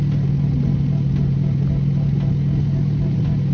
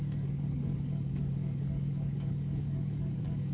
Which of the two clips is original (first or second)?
first